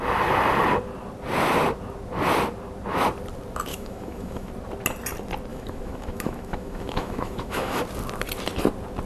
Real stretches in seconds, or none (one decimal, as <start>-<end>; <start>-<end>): 0.0-3.7; 4.5-5.5; 7.8-9.1